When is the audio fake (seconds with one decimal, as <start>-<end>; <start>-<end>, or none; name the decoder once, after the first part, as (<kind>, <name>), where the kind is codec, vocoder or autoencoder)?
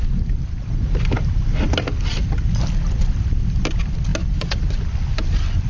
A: none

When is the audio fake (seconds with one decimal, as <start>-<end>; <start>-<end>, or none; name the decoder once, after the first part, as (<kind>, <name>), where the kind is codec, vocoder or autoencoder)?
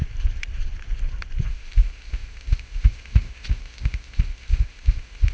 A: 1.5-5.3 (codec, ZipCodec)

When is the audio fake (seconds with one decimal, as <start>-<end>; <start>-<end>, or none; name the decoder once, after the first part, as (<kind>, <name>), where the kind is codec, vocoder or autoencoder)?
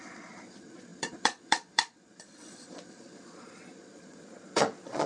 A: 0.0-5.1 (vocoder, Vocos)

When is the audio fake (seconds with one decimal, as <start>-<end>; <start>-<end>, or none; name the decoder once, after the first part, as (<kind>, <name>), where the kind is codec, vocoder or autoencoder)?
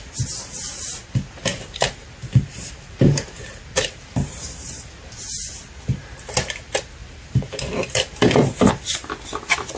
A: 1.5-5.0 (vocoder, BigVGAN v2); 7.0-8.7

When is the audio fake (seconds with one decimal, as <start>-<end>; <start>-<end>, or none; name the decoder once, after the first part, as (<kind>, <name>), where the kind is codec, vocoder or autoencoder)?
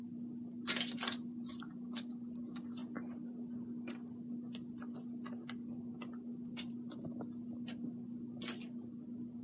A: none